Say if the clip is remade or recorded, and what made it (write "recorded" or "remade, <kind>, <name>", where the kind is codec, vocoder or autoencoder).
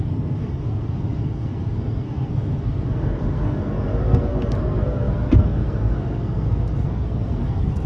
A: remade, codec, SNAC